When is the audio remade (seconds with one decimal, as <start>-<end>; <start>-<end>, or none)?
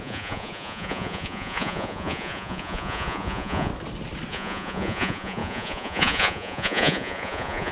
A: 0.0-3.7; 4.3-7.7